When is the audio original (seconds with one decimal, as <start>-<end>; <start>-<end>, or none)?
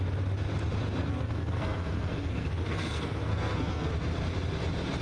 0.0-1.0; 3.9-5.0